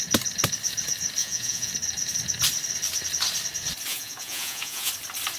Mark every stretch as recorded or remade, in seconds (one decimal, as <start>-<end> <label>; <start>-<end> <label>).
0.0-1.2 recorded; 1.2-1.7 remade; 1.7-3.9 recorded; 3.9-4.9 remade; 4.9-5.4 recorded